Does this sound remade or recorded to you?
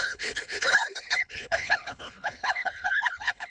remade